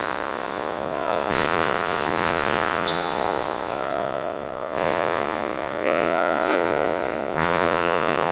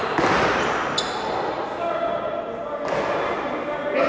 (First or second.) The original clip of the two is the second